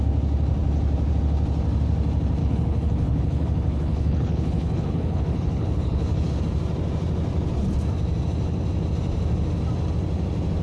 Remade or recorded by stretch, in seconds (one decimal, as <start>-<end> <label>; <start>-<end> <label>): 0.0-2.4 recorded; 2.4-6.4 remade; 6.4-10.6 recorded